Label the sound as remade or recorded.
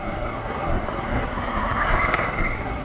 remade